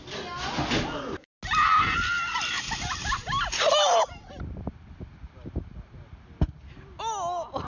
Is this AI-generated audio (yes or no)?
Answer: no